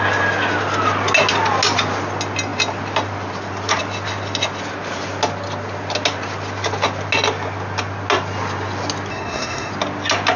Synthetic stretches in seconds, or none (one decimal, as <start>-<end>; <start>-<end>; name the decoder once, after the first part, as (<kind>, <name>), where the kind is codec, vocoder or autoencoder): 9.1-9.7 (codec, SNAC)